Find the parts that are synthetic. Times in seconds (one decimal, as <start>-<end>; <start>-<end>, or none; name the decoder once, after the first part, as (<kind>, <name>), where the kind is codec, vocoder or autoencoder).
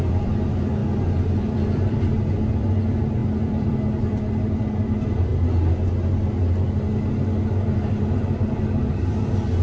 0.0-0.8 (vocoder, BigVGAN v2); 1.4-5.3; 7.7-9.6